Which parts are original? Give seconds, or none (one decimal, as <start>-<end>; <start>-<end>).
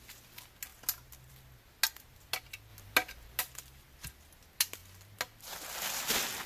0.0-6.5